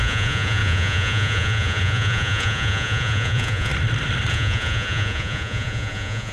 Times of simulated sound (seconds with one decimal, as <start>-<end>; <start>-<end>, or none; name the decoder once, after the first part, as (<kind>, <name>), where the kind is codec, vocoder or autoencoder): 0.0-3.7 (vocoder, Vocos); 4.3-6.3